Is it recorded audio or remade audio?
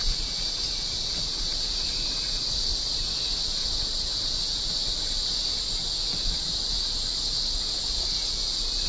recorded